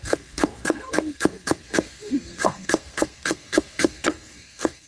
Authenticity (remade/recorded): remade